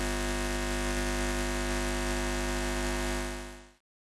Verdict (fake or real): real